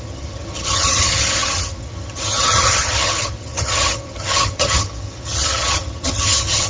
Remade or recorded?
remade